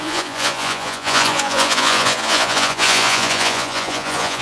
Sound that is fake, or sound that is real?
fake